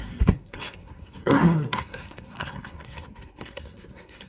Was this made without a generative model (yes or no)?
no